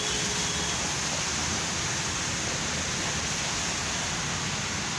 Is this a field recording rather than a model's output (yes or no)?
yes